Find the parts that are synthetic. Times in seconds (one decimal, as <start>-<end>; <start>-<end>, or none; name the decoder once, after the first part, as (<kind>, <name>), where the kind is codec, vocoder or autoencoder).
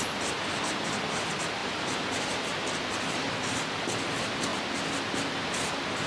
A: 1.6-2.2 (vocoder, BigVGAN v2)